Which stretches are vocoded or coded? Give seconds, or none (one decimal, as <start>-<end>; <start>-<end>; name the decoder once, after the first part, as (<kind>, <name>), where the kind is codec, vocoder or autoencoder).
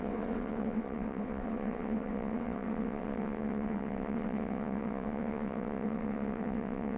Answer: 0.0-7.0 (vocoder, WaveNeXt)